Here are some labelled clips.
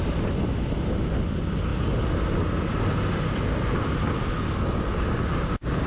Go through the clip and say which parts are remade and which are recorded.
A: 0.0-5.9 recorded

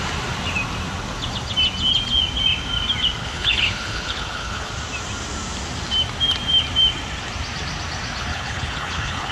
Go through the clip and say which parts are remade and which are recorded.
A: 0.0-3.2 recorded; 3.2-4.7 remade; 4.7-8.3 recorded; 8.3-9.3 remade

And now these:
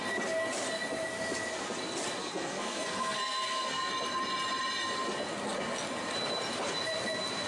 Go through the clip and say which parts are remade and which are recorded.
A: 0.0-2.2 recorded; 2.2-3.9 remade; 3.9-7.5 recorded

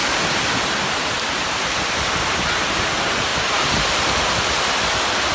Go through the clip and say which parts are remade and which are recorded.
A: 0.0-5.3 recorded

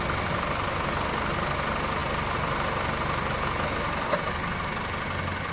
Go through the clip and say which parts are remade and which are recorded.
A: 0.0-5.5 recorded